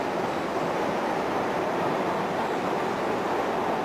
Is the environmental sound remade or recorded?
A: recorded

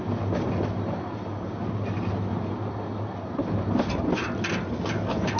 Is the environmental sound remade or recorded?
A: recorded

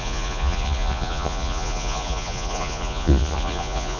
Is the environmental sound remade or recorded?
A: remade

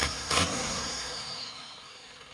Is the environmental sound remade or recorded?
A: remade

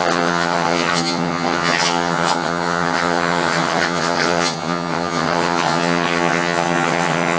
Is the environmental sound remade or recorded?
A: remade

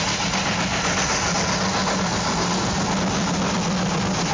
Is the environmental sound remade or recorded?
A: recorded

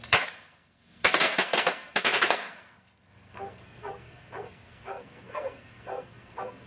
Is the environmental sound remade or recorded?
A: remade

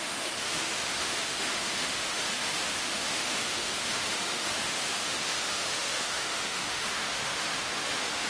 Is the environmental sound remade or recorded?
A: remade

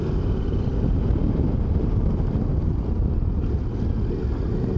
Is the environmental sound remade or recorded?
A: recorded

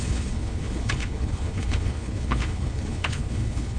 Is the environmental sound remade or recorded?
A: remade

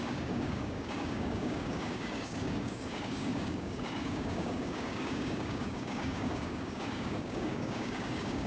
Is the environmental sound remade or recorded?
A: remade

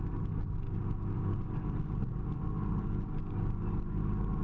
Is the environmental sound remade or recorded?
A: recorded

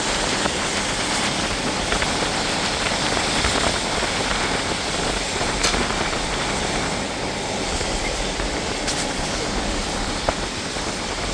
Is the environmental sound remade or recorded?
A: recorded